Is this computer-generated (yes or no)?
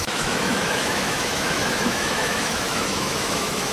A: yes